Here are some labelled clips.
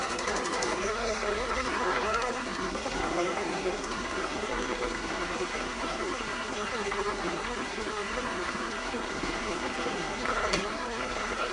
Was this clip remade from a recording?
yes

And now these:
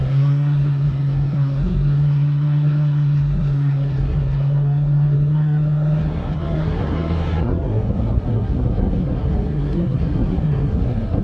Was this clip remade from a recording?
yes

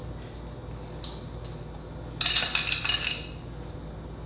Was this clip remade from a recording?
no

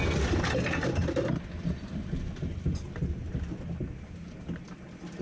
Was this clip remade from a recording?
no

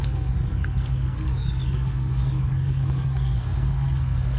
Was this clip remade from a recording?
yes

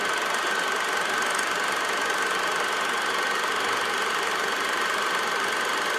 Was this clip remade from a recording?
no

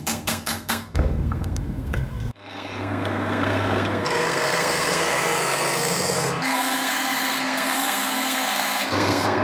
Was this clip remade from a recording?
yes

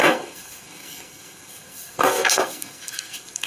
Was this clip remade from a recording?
yes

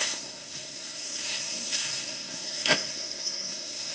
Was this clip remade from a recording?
yes